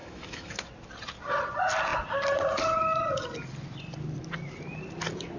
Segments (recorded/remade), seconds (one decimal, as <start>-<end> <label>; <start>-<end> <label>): 0.0-0.7 remade; 0.7-5.4 recorded